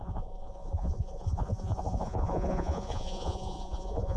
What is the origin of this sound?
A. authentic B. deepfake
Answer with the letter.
B